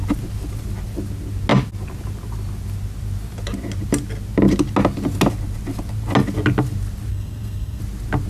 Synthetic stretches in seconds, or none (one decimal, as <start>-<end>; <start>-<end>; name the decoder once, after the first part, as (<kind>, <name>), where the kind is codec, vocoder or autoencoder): 7.1-7.8 (codec, SNAC)